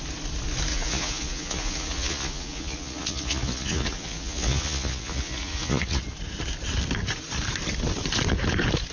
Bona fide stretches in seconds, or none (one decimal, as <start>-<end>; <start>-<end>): 0.0-0.7; 6.0-8.9